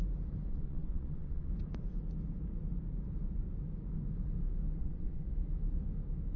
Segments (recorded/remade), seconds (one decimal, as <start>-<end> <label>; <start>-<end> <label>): 0.0-0.5 recorded; 0.5-1.5 remade; 1.5-4.8 recorded; 4.8-5.3 remade; 5.3-6.4 recorded